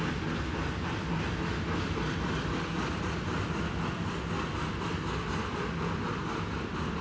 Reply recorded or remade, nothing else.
recorded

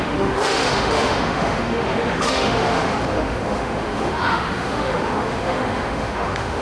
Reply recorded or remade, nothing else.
remade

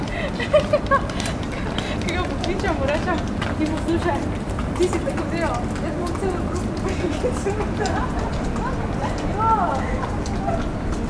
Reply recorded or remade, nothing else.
recorded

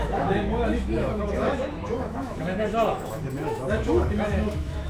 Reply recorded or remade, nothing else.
remade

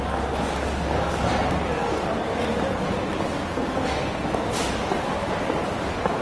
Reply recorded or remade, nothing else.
recorded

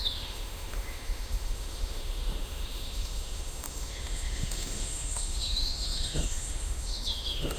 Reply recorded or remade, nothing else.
remade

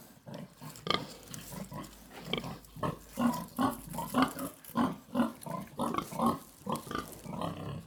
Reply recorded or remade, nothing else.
recorded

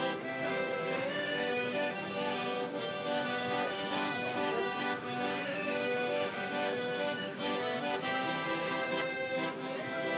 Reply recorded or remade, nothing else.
remade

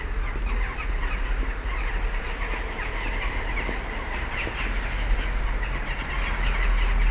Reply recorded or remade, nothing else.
recorded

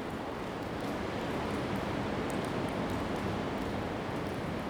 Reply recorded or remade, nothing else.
recorded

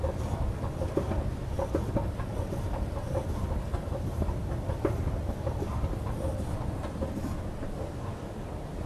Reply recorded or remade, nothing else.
recorded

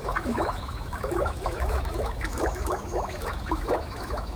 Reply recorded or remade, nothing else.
remade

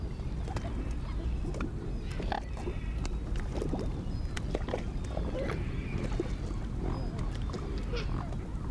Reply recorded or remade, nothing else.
recorded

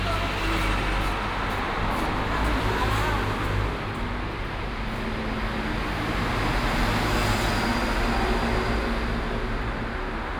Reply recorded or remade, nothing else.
recorded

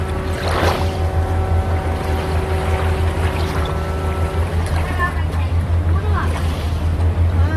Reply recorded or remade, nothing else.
recorded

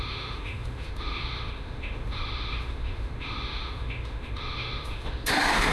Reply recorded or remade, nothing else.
remade